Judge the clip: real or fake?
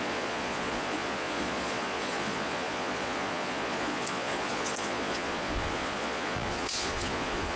fake